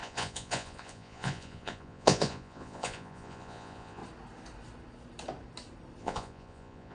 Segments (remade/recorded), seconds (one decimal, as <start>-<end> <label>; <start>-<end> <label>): 0.0-4.0 remade; 4.0-6.0 recorded; 6.0-6.9 remade